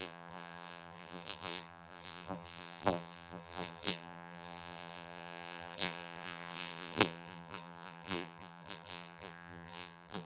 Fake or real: fake